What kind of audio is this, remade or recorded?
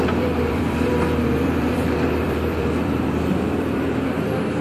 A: remade